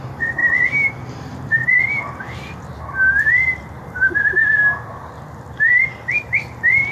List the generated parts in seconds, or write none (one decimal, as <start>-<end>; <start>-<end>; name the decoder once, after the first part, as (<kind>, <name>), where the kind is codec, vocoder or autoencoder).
0.0-0.4 (vocoder, BigVGAN v2); 0.9-1.6; 3.8-4.4; 6.3-6.9